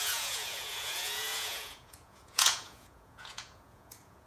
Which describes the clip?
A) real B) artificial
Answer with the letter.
B